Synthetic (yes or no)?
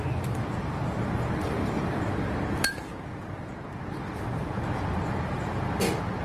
no